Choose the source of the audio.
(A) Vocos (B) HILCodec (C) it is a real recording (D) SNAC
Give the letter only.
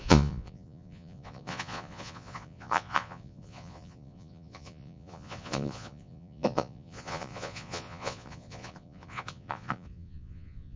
A